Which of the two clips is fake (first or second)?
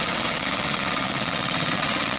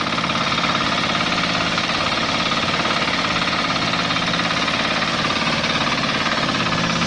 first